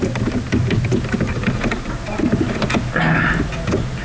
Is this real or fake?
real